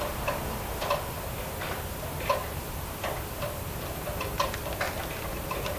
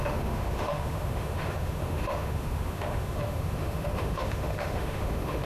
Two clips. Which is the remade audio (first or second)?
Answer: second